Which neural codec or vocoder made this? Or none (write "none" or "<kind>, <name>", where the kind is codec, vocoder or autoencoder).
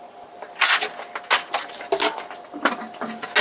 none